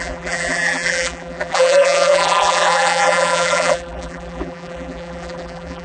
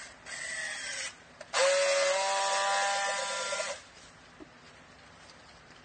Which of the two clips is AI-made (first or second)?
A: first